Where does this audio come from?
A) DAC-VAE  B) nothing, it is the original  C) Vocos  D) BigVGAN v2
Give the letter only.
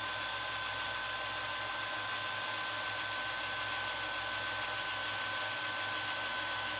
B